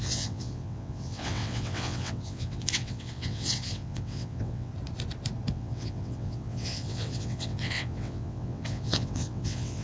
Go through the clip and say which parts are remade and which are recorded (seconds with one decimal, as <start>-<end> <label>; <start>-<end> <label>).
0.0-4.7 remade; 4.7-5.5 recorded; 5.5-9.8 remade